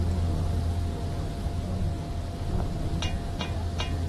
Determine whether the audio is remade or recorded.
recorded